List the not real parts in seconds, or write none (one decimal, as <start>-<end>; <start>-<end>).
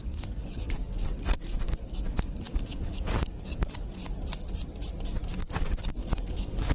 0.0-4.0; 5.8-6.7